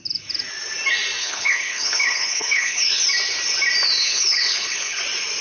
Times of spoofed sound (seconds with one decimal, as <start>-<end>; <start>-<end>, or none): 1.2-3.0; 4.0-5.0